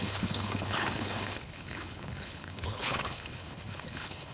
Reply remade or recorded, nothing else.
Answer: remade